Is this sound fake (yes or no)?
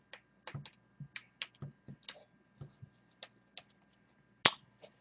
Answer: no